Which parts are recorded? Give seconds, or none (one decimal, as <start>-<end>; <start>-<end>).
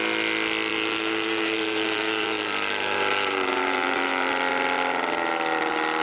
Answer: 0.0-0.7; 4.3-6.0